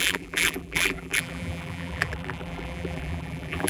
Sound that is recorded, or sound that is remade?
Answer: remade